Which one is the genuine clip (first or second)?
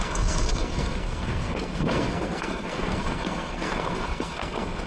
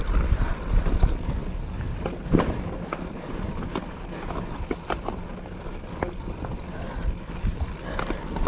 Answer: second